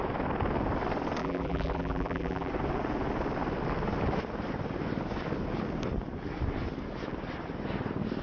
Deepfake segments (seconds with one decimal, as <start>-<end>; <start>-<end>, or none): 1.2-2.5